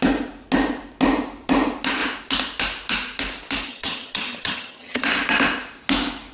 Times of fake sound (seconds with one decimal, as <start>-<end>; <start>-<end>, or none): 3.7-5.0

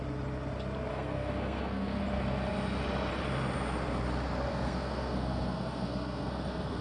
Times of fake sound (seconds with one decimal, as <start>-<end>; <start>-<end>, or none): 0.9-2.0; 4.5-6.8

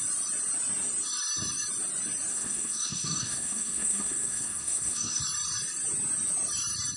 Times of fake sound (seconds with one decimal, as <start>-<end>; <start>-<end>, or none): 2.3-5.2

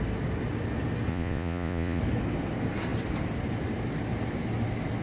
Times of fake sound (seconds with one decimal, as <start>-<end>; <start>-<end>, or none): 1.1-2.0

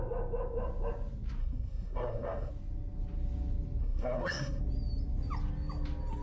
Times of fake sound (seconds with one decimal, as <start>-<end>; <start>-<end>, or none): 1.4-2.5; 3.8-4.6

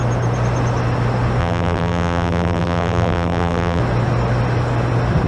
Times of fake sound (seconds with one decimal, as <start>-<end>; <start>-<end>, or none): 1.4-3.8

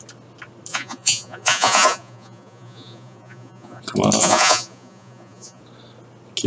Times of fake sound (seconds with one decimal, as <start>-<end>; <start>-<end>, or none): 0.7-3.8; 4.2-5.6